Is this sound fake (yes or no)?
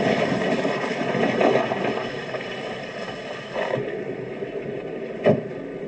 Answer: no